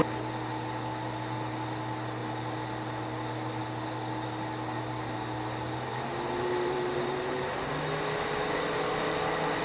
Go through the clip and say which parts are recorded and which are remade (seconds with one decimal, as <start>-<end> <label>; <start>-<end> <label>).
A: 0.0-5.9 recorded; 5.9-7.6 remade; 7.6-9.6 recorded